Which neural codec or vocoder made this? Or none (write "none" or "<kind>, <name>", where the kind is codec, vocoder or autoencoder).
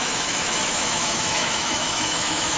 autoencoder, DAC-VAE